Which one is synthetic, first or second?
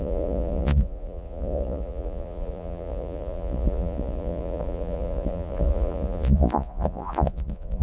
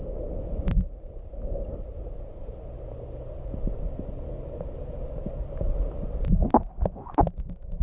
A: first